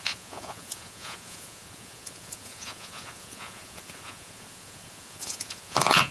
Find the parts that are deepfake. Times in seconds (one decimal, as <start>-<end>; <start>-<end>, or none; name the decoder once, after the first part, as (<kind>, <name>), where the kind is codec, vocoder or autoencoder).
0.0-6.1 (vocoder, Vocos)